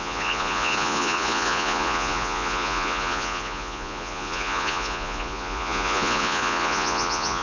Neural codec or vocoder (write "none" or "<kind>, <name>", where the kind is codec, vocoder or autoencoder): vocoder, Vocos